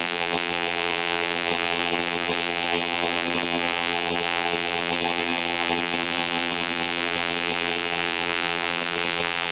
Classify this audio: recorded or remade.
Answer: remade